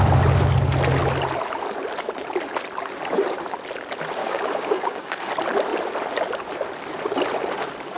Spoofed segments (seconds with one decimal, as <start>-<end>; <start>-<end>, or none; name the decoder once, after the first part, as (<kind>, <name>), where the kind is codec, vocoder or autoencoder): 4.2-5.3 (codec, DAC)